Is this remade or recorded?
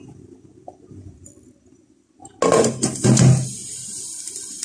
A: recorded